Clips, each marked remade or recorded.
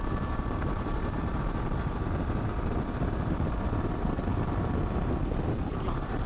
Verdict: remade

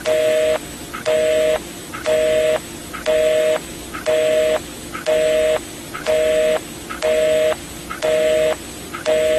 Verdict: recorded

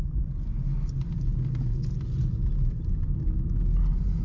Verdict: recorded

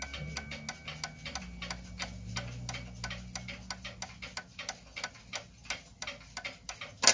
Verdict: recorded